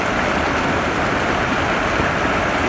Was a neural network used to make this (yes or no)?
no